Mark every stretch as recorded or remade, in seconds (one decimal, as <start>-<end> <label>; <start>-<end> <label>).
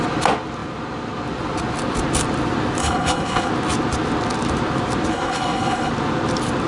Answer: 0.0-2.8 recorded; 2.8-3.5 remade; 3.5-5.1 recorded; 5.1-5.9 remade; 5.9-6.7 recorded